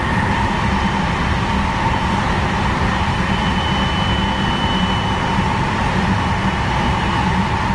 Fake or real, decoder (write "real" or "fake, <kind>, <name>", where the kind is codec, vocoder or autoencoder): real